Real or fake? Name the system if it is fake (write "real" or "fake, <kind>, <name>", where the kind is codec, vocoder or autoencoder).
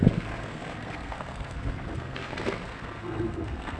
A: fake, codec, SNAC